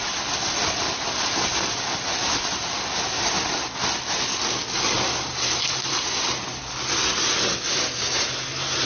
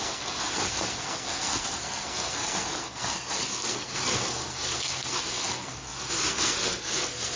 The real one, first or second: first